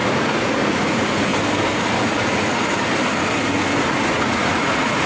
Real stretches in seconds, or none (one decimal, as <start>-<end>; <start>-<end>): 1.3-2.0; 2.7-3.8